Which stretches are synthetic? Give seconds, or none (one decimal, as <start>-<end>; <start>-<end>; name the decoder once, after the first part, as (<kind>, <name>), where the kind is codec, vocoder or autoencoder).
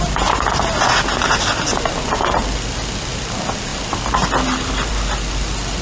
none